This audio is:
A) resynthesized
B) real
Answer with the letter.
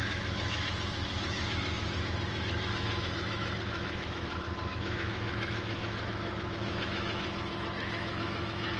A